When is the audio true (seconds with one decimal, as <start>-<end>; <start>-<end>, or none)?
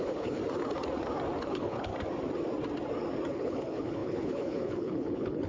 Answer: 0.4-1.4; 1.9-3.3